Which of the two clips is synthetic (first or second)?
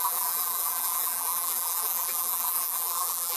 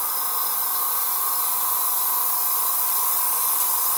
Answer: first